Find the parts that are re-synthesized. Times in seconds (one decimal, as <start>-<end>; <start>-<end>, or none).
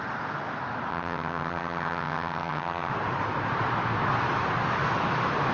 0.9-2.9